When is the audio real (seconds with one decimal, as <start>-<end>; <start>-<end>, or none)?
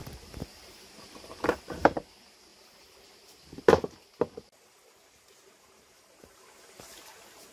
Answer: 2.5-5.4